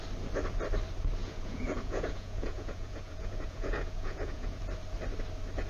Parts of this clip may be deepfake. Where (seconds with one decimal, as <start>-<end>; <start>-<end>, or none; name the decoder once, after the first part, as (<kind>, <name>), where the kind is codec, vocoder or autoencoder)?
1.2-4.6 (vocoder, Vocos)